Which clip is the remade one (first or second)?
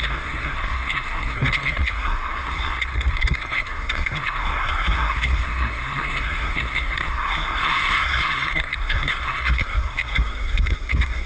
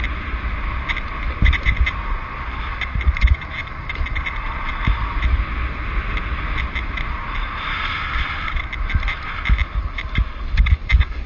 first